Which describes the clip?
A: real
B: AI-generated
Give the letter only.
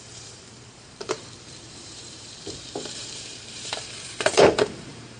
B